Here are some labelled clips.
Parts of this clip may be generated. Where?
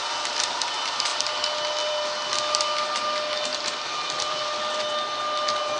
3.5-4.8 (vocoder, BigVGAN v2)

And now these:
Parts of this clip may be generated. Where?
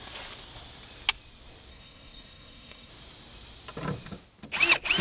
1.7-2.9 (codec, SNAC)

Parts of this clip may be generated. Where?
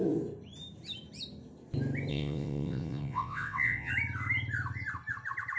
2.1-3.9 (vocoder, WaveNeXt)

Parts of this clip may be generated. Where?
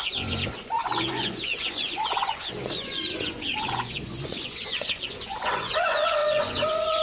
0.0-7.0 (vocoder, Vocos)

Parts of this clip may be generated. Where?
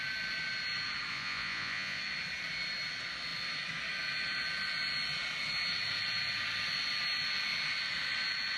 1.1-2.0 (vocoder, Vocos)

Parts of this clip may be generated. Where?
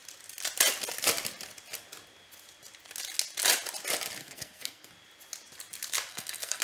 4.2-4.9 (codec, SNAC); 6.1-6.6